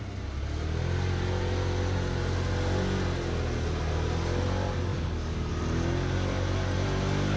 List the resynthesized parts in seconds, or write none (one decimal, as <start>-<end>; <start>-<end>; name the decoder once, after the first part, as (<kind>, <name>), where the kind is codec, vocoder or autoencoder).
4.9-5.5 (codec, DAC)